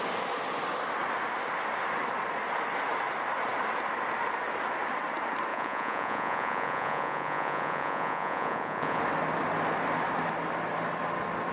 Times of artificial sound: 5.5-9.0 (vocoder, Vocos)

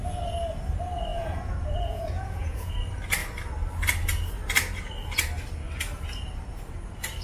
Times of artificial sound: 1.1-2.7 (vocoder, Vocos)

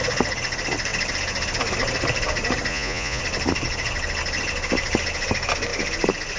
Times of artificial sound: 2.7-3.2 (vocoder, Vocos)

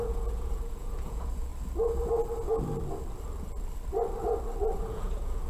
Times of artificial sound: 0.0-1.5 (vocoder, Vocos); 4.8-5.5

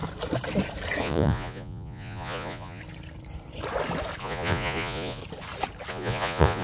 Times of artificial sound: 1.0-2.8 (vocoder, Vocos); 4.2-5.2; 5.9-6.6

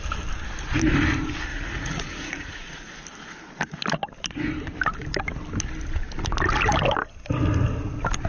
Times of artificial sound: 1.5-3.0 (vocoder, Vocos)